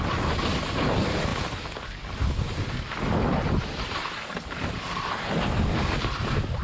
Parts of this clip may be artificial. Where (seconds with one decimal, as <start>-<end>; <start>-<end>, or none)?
none